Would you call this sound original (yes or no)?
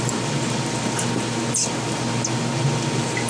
yes